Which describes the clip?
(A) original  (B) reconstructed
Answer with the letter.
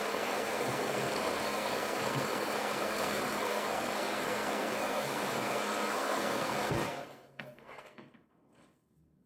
B